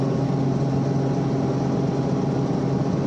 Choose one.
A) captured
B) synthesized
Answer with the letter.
A